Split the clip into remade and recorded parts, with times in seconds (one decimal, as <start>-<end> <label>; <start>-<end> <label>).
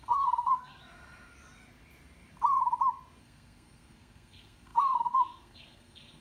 0.0-0.7 remade; 0.7-3.2 recorded; 3.2-6.2 remade